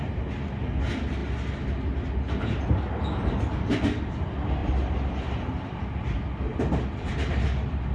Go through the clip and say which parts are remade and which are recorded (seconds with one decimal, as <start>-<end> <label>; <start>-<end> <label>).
0.0-1.2 remade; 1.2-4.1 recorded; 4.1-7.9 remade